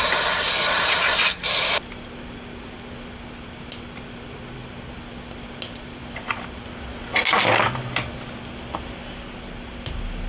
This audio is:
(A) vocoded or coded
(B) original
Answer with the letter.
B